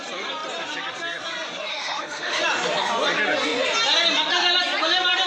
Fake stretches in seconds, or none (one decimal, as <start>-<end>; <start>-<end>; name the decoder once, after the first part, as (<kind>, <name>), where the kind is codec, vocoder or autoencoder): 1.7-2.4 (autoencoder, DAC-VAE)